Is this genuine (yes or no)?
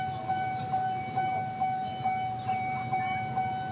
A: yes